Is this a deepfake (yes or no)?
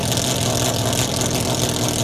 no